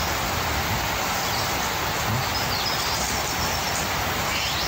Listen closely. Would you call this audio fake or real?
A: real